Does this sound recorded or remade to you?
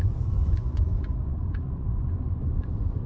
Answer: remade